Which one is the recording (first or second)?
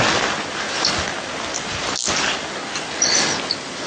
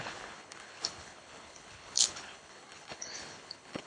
first